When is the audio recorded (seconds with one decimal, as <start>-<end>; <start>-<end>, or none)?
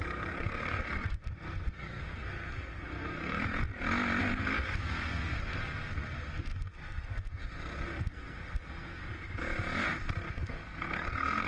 3.5-4.2; 9.0-10.3